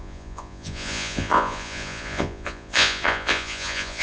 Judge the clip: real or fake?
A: fake